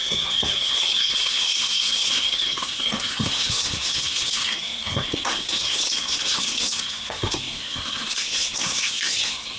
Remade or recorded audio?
remade